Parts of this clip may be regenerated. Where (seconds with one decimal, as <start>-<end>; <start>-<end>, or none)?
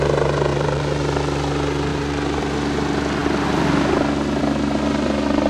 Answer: 0.5-1.0; 1.9-2.4